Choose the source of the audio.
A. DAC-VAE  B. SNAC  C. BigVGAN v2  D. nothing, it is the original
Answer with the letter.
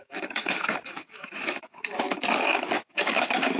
A